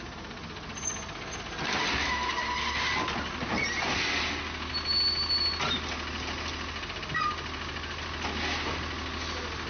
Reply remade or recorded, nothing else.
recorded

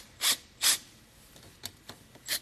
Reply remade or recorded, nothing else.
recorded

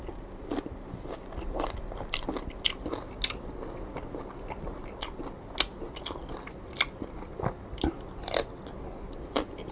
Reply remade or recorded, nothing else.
recorded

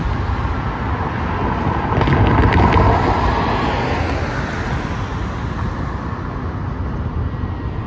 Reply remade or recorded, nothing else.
recorded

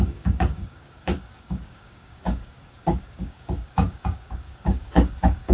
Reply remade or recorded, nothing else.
remade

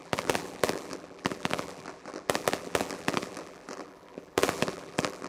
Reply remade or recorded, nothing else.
remade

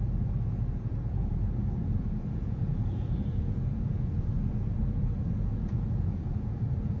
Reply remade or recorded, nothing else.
remade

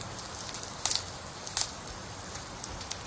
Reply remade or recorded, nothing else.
recorded